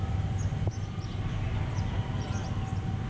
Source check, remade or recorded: recorded